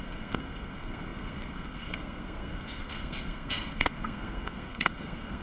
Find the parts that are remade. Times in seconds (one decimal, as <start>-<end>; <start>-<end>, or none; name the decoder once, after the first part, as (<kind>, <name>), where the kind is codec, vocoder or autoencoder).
0.0-5.4 (codec, SNAC)